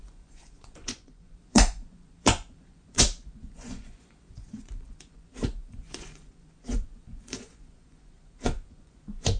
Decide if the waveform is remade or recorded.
remade